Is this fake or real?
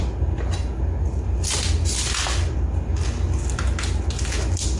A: real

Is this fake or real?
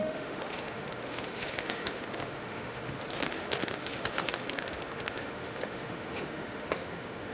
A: fake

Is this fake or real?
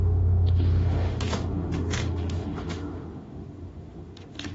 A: fake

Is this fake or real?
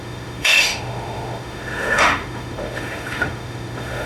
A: fake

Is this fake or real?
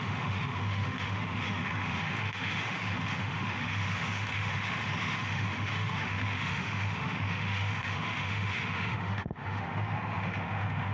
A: fake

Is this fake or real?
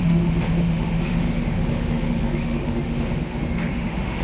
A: fake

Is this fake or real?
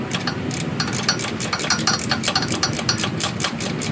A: real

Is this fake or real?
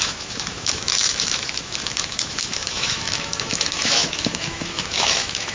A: fake